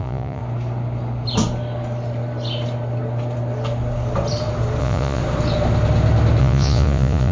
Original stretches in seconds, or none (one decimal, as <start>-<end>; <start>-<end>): 0.4-4.8; 5.2-6.4